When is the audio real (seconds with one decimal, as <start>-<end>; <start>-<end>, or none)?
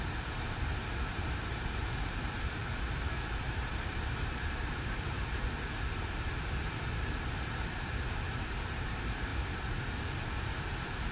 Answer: 2.7-3.4; 9.3-10.0